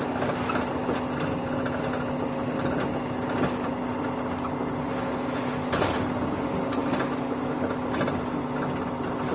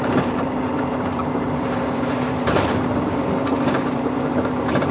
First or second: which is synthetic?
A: second